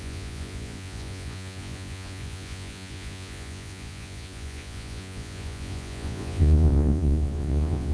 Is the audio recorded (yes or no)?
no